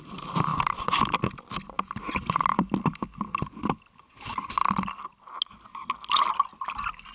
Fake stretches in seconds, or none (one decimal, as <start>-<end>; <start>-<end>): none